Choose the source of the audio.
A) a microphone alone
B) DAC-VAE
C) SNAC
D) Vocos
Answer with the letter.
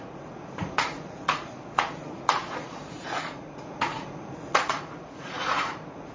D